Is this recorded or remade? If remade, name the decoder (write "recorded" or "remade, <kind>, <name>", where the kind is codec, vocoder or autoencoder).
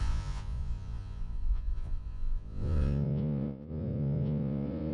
remade, vocoder, Vocos